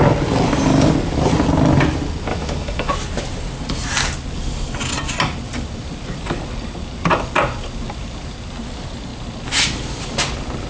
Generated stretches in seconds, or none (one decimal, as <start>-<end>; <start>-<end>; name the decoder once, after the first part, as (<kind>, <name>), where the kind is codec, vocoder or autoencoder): 2.3-2.9 (autoencoder, DAC-VAE)